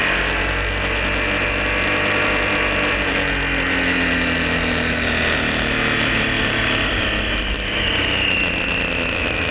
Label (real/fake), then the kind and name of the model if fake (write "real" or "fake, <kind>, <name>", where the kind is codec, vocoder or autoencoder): real